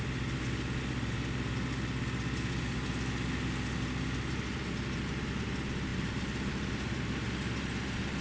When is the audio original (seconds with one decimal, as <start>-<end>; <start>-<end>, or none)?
0.0-8.2